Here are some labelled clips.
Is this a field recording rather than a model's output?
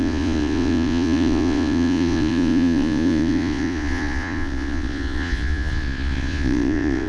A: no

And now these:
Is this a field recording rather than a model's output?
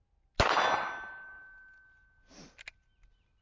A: yes